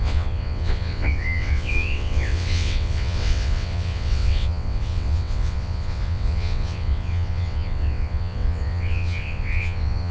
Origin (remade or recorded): remade